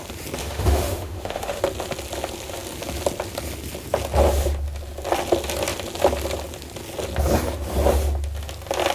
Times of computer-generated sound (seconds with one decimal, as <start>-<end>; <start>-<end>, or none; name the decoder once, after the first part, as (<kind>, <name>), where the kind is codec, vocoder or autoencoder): 0.4-1.6 (autoencoder, DAC-VAE)